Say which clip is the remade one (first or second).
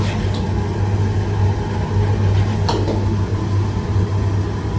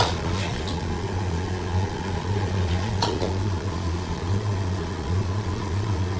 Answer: second